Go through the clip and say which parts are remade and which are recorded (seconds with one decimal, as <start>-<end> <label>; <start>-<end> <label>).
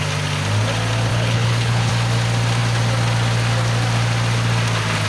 0.0-1.1 recorded; 1.1-1.9 remade; 1.9-5.1 recorded